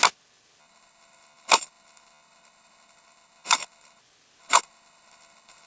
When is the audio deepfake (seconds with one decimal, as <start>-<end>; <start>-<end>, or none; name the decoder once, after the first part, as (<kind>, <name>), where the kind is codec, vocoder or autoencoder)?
0.6-4.0 (codec, HILCodec); 4.4-5.7